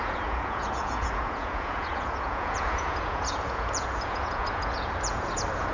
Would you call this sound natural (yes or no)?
no